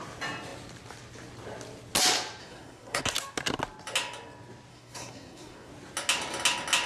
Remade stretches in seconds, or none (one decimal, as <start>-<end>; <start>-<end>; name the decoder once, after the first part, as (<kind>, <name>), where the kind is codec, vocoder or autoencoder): 2.4-3.0 (codec, SNAC); 4.7-5.7